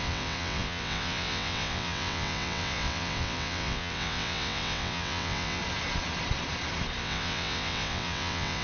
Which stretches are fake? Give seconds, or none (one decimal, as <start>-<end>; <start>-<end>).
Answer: 0.0-5.6; 7.0-8.6